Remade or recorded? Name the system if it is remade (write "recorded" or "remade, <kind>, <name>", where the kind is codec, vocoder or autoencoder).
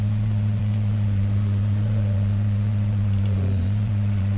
remade, vocoder, Vocos